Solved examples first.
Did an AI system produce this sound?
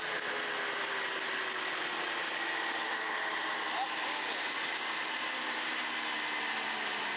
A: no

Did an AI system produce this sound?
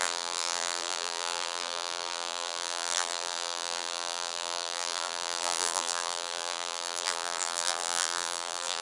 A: yes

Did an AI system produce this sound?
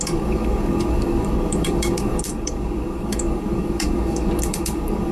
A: yes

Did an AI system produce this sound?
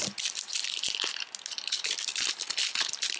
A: no